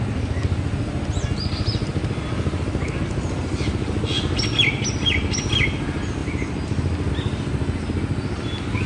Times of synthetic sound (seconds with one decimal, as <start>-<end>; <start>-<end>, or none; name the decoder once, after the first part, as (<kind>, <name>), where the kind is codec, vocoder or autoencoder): 6.2-7.1 (vocoder, BigVGAN v2)